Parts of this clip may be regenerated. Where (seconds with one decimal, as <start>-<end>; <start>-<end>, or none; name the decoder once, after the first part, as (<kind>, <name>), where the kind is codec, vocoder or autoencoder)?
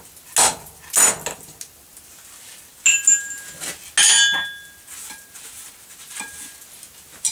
none